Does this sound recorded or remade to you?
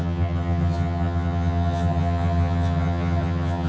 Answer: remade